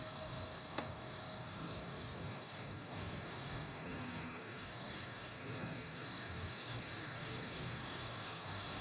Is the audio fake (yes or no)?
yes